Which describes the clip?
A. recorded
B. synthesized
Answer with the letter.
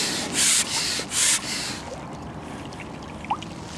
A